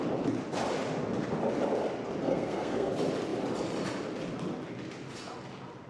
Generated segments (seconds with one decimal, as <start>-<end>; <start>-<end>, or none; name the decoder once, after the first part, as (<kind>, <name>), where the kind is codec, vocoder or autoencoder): 2.2-2.9 (codec, SNAC)